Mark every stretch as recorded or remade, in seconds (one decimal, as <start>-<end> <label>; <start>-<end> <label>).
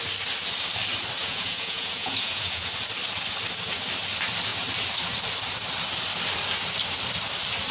0.0-1.2 recorded; 1.2-2.7 remade; 2.7-7.7 recorded